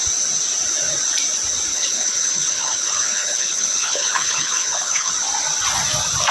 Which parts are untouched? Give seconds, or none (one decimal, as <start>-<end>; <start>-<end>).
0.0-1.7; 5.1-6.3